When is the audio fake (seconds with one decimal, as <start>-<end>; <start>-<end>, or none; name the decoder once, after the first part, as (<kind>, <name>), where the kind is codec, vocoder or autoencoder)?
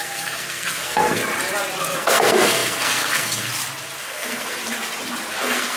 0.0-1.2 (codec, SNAC); 1.8-3.5; 4.0-4.6; 5.3-5.8